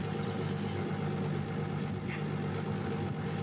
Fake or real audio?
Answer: real